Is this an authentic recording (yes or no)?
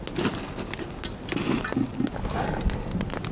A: yes